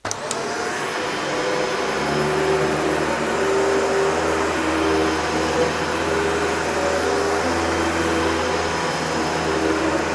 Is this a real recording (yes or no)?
yes